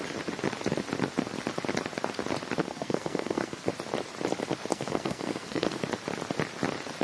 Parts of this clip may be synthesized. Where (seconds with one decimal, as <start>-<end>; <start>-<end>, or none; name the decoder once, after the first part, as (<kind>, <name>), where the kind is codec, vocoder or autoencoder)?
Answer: 2.6-3.7 (codec, SNAC); 4.7-5.8